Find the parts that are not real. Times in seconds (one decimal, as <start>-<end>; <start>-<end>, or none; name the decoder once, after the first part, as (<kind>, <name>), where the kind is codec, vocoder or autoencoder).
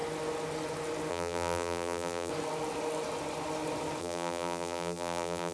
1.1-2.3 (vocoder, BigVGAN v2); 4.0-5.5